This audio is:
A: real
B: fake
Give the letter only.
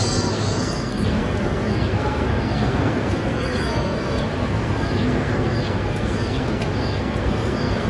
B